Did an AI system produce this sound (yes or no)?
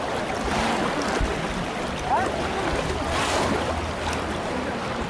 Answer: no